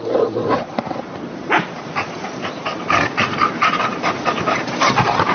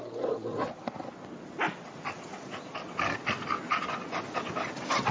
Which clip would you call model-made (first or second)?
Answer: first